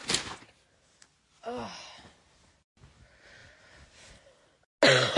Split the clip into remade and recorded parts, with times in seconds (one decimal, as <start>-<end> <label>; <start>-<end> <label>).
0.0-5.2 recorded